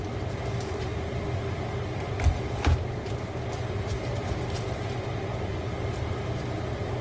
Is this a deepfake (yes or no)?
no